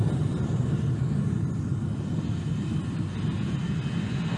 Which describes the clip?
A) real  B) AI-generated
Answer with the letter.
A